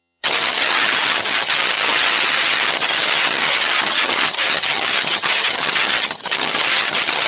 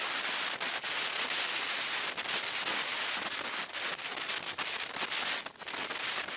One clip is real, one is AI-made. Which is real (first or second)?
second